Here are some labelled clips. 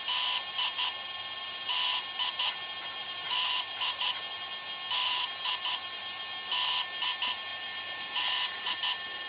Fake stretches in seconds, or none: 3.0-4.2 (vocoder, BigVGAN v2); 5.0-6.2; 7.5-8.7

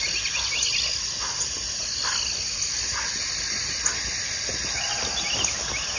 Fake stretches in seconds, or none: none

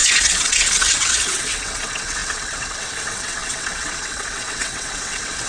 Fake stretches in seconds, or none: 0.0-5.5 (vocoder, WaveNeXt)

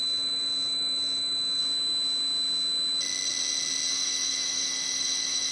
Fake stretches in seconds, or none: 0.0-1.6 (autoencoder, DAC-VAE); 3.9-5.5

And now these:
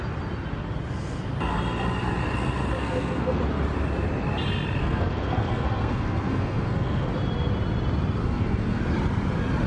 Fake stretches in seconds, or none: 2.8-3.4 (codec, SNAC); 4.8-7.1; 8.2-8.8